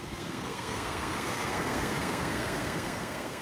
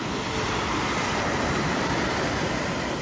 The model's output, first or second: first